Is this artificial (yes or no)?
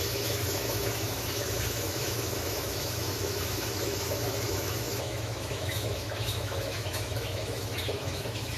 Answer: yes